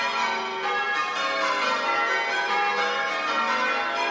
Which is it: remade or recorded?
recorded